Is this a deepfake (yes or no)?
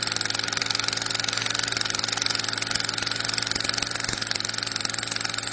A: no